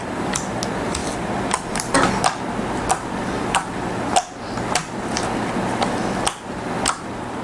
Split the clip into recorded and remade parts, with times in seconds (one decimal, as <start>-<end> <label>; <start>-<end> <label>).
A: 0.0-7.4 recorded